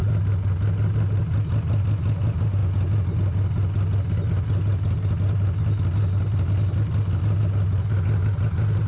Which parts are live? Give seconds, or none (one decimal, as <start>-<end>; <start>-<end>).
0.0-8.9